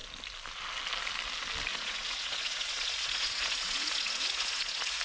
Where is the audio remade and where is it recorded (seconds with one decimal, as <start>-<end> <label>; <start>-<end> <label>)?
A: 0.0-1.7 recorded; 1.7-5.0 remade